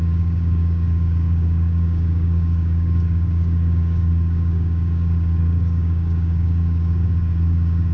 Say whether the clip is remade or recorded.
remade